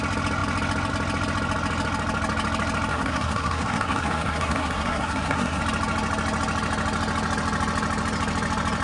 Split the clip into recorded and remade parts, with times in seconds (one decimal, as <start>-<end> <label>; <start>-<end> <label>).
0.0-2.9 recorded; 2.9-5.6 remade; 5.6-8.8 recorded